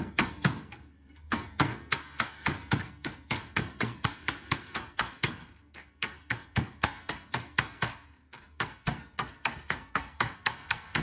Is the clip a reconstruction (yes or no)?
yes